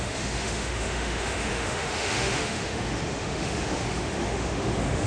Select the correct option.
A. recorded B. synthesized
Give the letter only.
B